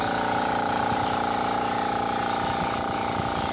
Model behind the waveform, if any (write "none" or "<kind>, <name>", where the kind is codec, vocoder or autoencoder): vocoder, BigVGAN v2